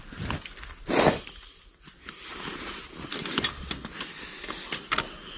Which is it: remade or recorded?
recorded